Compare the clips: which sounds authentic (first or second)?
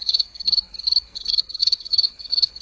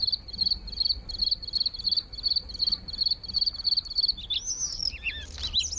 second